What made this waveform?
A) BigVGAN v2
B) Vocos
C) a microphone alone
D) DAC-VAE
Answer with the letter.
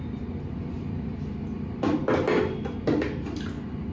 C